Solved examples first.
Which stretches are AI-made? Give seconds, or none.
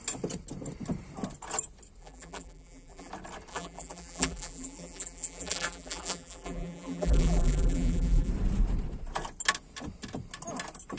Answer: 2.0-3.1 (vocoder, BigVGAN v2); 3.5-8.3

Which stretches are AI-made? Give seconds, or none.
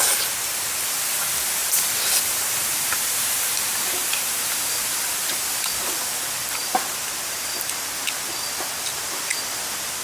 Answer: 1.6-5.0 (vocoder, BigVGAN v2); 6.6-7.7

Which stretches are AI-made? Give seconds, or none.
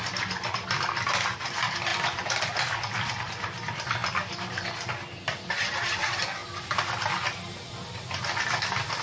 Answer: none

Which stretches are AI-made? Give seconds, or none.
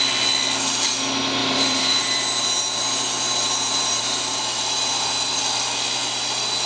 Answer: 1.4-5.4 (vocoder, BigVGAN v2)